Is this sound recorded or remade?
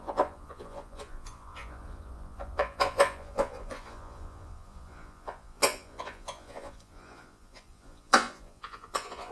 remade